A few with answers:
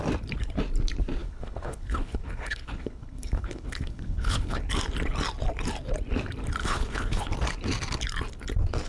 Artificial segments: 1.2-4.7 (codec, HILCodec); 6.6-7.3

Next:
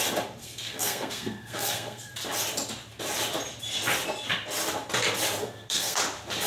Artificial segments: 0.4-2.1 (codec, SNAC); 5.4-6.0

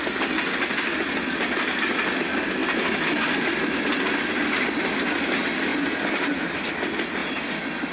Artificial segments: none